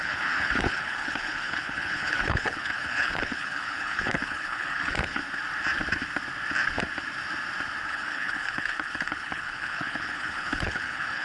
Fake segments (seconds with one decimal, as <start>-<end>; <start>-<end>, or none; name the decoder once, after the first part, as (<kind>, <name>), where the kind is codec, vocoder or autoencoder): 0.0-5.2 (codec, HILCodec); 7.9-11.2